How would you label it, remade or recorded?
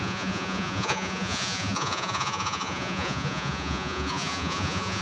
remade